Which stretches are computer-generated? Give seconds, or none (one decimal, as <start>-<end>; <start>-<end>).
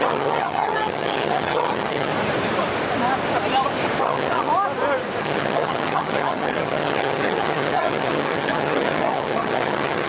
0.0-2.1; 4.0-4.5; 5.2-10.1